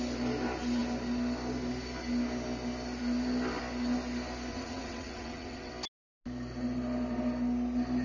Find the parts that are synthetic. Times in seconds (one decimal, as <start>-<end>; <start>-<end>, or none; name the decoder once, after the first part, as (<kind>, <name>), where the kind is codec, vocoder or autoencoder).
4.5-5.7 (vocoder, WaveNeXt)